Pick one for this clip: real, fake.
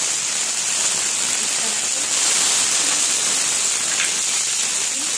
real